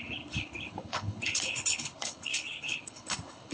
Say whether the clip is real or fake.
fake